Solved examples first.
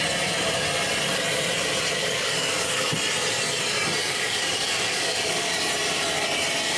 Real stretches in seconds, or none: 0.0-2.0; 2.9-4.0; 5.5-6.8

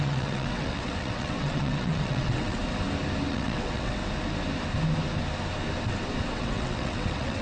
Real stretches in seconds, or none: 2.6-3.3; 4.0-6.3

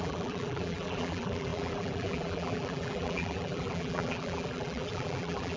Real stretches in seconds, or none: none